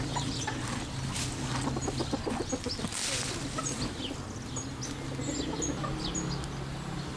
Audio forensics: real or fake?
real